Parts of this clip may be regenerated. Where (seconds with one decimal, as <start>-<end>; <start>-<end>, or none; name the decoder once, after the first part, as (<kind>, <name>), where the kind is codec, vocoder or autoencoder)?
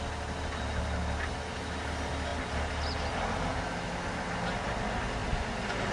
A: none